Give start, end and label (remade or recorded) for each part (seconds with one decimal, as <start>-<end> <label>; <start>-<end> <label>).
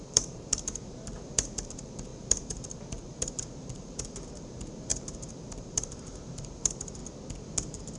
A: 0.0-7.0 remade; 7.0-8.0 recorded